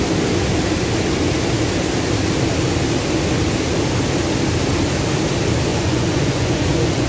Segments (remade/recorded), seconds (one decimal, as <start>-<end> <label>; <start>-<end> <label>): 0.0-5.7 recorded; 5.7-7.1 remade